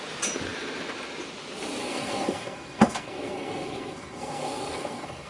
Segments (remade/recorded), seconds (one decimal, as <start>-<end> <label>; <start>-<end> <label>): 0.0-1.8 recorded; 1.8-5.3 remade